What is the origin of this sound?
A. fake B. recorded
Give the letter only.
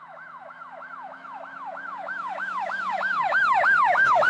A